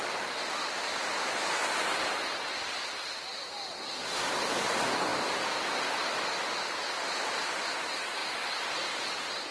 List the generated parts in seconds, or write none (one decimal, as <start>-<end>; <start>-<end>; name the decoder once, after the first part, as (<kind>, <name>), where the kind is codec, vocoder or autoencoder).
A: none